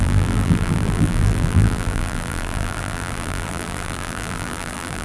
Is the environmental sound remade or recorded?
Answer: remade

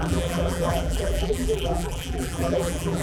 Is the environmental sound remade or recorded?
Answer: remade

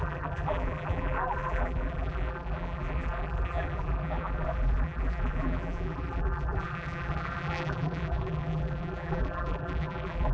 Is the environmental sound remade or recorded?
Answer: remade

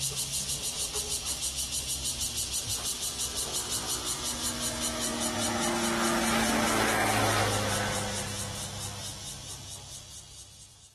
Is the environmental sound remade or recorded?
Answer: recorded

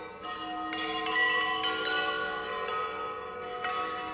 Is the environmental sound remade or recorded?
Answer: recorded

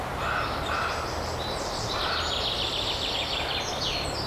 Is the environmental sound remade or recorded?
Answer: recorded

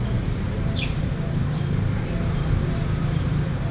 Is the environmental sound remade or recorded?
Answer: remade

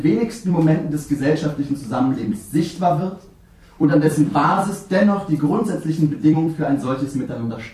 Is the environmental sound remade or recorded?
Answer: remade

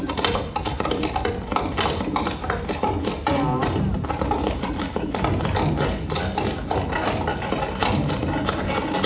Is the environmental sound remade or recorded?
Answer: recorded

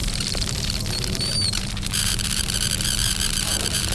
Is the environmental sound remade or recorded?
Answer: remade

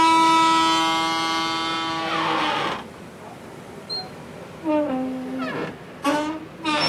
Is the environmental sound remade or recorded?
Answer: recorded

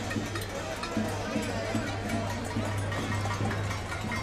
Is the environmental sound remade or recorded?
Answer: recorded